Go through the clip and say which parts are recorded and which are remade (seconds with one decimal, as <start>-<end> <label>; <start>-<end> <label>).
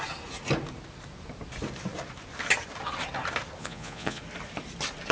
0.0-3.6 recorded; 3.6-4.2 remade; 4.2-5.1 recorded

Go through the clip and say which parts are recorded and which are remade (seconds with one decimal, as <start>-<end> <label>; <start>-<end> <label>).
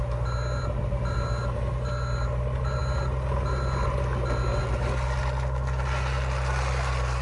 0.0-7.2 recorded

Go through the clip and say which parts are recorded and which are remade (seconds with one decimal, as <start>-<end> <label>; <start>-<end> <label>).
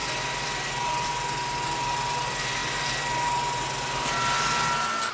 0.0-5.1 recorded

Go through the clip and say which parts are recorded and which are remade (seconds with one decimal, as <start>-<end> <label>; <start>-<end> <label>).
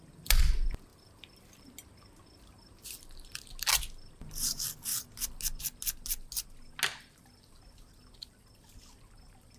0.0-9.6 recorded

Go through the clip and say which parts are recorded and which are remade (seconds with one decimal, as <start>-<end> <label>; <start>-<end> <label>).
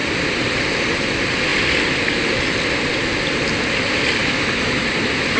0.0-4.2 recorded; 4.2-4.8 remade; 4.8-5.4 recorded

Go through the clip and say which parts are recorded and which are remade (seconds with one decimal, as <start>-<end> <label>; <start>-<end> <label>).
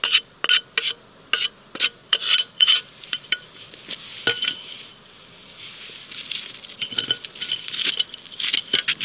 0.0-2.0 recorded; 2.0-3.6 remade; 3.6-9.0 recorded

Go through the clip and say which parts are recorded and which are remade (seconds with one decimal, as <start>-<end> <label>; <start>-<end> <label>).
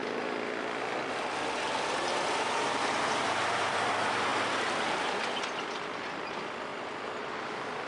0.0-7.9 remade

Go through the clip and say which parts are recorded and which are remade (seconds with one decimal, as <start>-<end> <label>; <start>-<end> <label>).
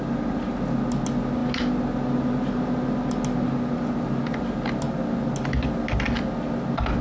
0.0-7.0 recorded